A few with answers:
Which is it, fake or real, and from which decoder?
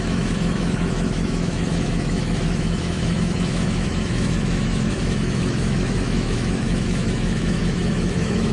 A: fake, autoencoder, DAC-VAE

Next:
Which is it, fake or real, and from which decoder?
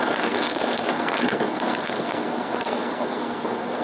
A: fake, codec, SNAC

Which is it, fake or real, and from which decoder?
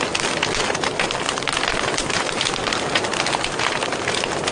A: real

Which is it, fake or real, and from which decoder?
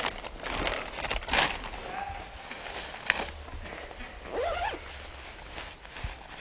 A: real